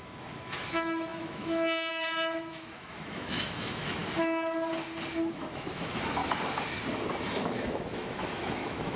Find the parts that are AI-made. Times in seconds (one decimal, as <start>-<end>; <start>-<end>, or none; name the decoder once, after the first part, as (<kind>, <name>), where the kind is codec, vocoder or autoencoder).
0.0-4.0 (autoencoder, DAC-VAE); 5.3-6.2; 7.2-9.0